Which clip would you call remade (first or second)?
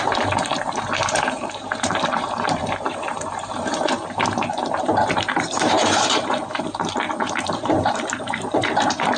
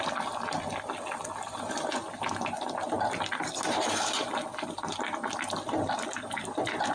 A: first